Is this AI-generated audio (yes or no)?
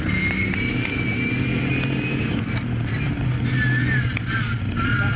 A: no